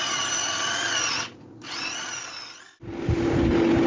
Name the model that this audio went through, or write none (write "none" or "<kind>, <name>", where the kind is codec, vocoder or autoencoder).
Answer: none